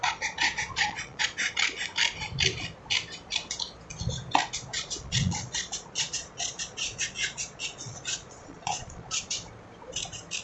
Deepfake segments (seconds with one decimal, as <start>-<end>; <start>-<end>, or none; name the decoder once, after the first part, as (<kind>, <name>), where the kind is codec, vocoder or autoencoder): 0.0-1.5 (vocoder, Vocos); 4.7-9.2